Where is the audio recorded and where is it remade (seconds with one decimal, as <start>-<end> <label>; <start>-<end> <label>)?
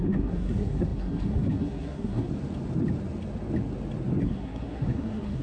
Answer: 0.0-2.3 remade; 2.3-4.2 recorded; 4.2-5.4 remade